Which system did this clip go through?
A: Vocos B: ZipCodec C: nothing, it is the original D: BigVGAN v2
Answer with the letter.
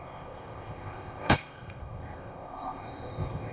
B